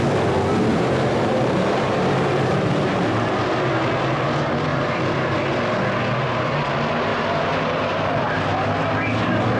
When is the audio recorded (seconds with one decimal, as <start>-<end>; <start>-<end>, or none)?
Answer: 0.0-0.7; 3.3-4.7; 5.2-7.1; 8.3-9.6